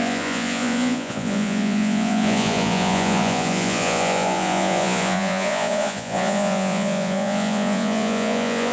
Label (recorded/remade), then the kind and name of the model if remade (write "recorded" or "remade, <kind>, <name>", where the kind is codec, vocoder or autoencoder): remade, vocoder, Vocos